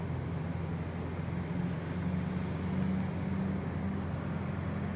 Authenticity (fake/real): real